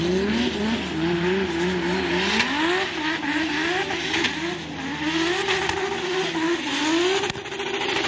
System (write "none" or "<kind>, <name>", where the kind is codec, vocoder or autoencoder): none